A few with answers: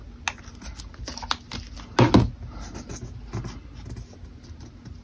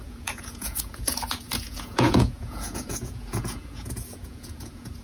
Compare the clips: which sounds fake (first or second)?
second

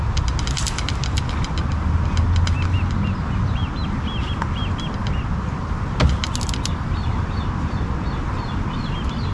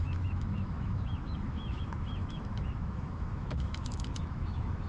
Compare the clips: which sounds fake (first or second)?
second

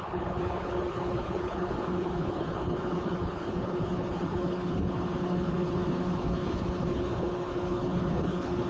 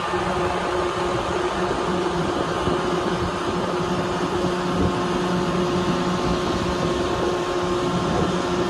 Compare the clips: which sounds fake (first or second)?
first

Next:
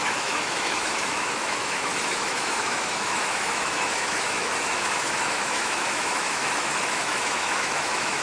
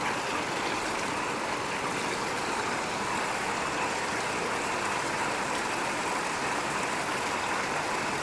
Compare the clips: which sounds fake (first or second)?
first